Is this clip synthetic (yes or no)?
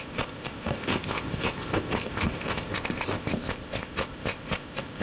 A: yes